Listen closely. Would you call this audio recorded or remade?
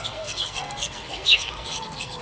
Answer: remade